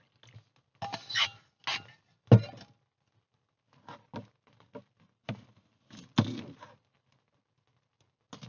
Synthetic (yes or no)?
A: no